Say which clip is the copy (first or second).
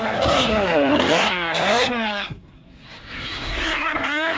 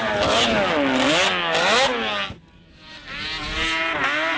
first